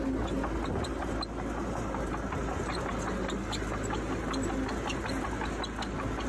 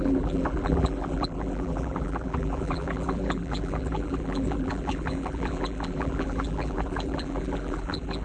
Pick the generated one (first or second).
second